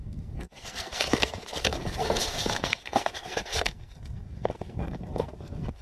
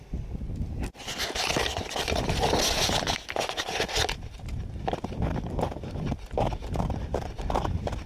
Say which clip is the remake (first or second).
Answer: first